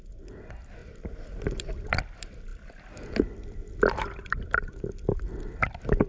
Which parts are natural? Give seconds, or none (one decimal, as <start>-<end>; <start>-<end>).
0.0-6.1